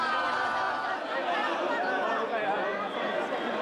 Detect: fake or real real